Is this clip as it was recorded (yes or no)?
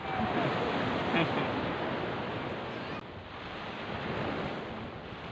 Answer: yes